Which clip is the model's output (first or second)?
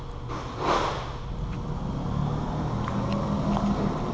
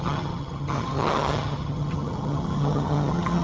second